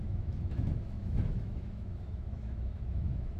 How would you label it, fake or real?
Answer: fake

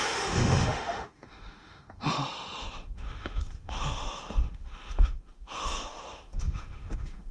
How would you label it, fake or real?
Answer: fake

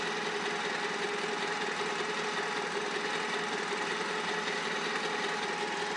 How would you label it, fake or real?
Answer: real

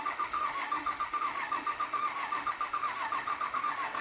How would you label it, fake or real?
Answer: fake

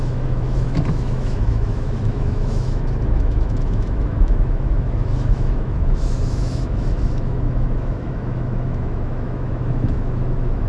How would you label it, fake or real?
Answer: fake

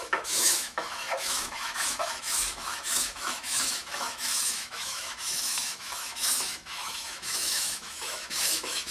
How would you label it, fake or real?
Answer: fake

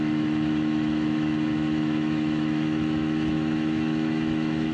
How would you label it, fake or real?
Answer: fake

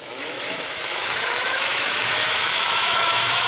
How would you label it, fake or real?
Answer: fake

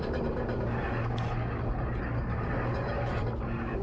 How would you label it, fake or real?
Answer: real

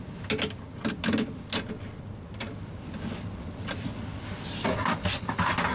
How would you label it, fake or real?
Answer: real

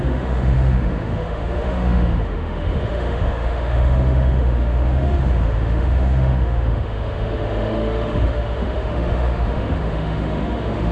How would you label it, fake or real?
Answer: fake